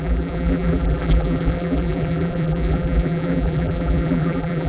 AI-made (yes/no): yes